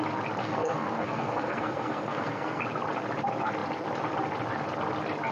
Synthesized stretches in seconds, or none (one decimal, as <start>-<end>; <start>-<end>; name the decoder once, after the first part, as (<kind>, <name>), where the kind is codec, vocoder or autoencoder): 0.4-2.6 (codec, SNAC)